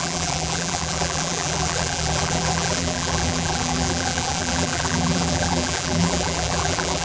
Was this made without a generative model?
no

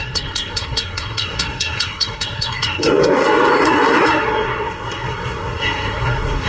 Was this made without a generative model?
no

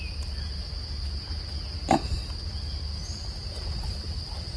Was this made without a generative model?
yes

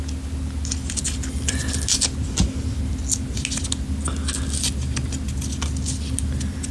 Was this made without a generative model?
yes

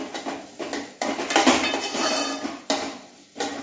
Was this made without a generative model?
yes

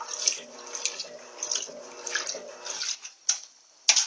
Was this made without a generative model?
yes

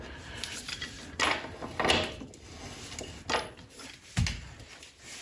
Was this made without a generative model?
yes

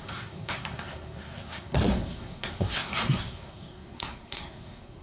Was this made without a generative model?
no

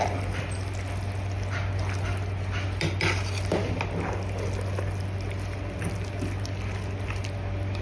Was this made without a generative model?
yes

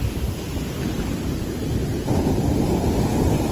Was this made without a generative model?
yes